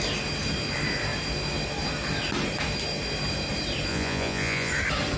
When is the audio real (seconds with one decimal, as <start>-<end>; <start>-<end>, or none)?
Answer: 0.0-3.9; 4.7-5.2